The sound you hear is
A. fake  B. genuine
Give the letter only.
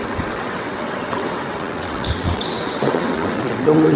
A